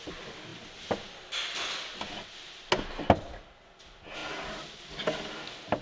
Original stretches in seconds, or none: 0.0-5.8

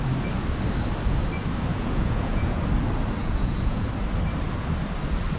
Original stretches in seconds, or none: 0.0-1.7; 2.6-3.2; 3.9-5.4

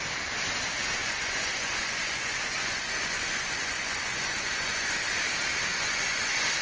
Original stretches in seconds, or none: 0.0-1.0; 5.0-5.7

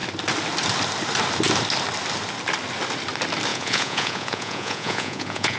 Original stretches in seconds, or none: 0.0-3.5

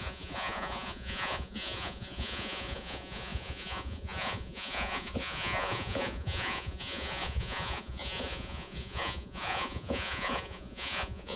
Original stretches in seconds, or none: none

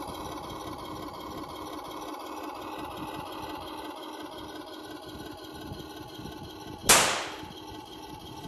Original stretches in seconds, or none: 0.0-8.5